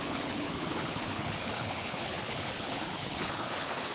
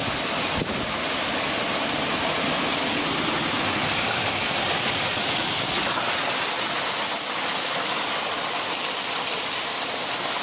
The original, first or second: second